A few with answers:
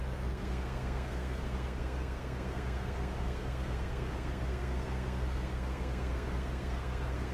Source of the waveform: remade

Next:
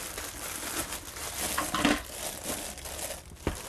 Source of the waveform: recorded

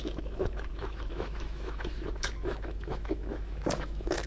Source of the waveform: remade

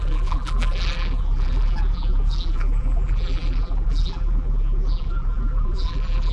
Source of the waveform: remade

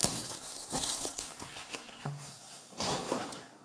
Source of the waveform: remade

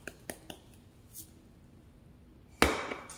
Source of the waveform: recorded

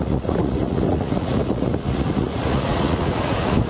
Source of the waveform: remade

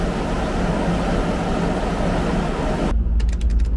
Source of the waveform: recorded